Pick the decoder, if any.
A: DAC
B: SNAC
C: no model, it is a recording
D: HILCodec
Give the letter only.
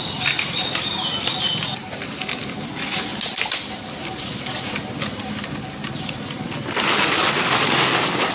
C